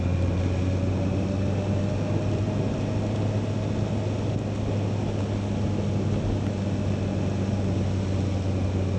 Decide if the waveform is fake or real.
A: real